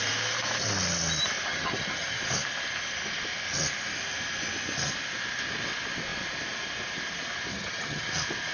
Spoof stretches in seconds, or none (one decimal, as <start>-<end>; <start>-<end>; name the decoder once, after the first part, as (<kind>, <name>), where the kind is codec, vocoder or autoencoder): 1.5-2.2 (vocoder, HiFi-GAN); 7.5-8.1

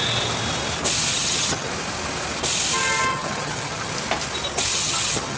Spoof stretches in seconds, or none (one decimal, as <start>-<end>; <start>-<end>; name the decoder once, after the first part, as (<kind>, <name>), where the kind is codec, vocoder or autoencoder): 1.1-1.7 (vocoder, HiFi-GAN); 3.1-3.9; 4.7-5.4

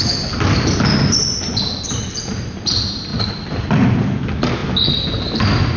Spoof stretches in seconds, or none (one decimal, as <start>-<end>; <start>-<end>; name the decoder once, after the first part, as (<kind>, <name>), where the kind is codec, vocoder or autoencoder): none

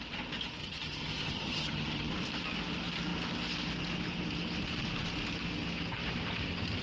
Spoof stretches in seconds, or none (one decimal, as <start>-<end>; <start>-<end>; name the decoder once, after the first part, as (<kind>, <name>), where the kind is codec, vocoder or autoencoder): 0.6-2.1 (vocoder, HiFi-GAN)

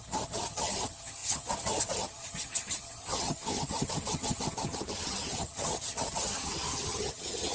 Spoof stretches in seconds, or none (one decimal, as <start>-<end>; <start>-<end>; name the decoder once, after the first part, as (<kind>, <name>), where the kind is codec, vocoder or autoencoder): 0.0-7.5 (vocoder, HiFi-GAN)

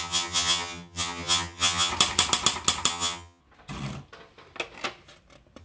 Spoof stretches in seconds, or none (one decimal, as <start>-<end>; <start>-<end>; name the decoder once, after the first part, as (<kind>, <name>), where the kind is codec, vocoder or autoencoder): 0.0-1.9 (vocoder, HiFi-GAN); 2.9-3.4

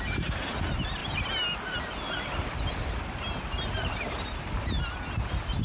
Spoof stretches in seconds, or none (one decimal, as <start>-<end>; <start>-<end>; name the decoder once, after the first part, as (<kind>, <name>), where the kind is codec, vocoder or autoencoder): none

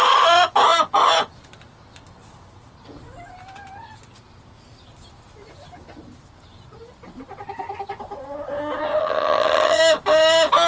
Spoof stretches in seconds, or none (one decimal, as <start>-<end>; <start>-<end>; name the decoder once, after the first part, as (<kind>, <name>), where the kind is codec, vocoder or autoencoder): 9.0-9.8 (vocoder, HiFi-GAN)